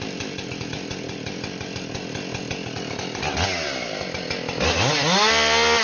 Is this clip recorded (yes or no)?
yes